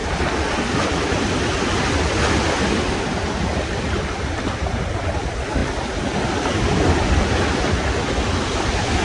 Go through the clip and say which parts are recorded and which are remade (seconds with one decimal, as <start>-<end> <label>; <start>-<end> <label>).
0.0-9.0 recorded